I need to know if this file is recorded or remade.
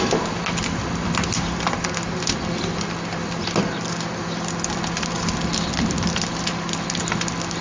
recorded